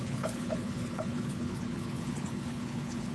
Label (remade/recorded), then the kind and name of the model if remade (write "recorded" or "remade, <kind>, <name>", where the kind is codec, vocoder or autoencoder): remade, codec, HILCodec